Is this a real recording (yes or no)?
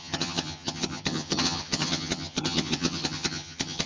no